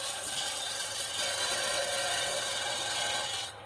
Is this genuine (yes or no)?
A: no